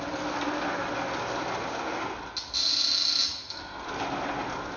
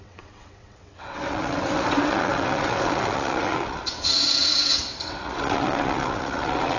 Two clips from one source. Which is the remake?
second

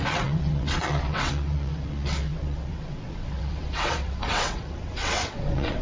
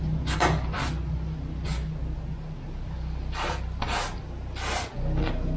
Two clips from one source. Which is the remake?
first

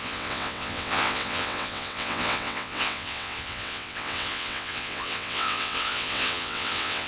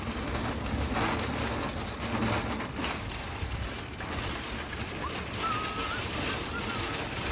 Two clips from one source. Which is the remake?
first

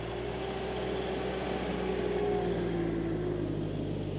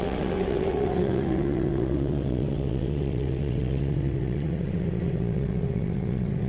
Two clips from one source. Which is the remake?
second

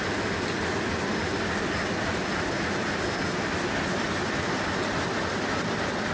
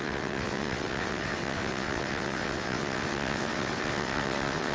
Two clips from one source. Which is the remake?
second